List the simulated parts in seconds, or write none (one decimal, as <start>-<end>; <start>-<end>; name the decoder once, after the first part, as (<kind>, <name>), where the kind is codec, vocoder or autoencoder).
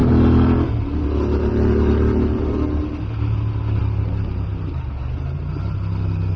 none